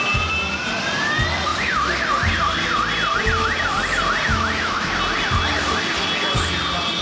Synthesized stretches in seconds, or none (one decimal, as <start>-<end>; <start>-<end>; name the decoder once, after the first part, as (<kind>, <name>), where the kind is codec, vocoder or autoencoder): 4.3-4.9 (autoencoder, DAC-VAE)